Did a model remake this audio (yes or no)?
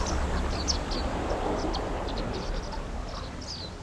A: no